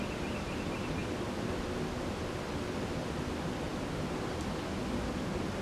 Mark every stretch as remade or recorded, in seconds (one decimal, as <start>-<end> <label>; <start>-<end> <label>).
0.0-5.6 recorded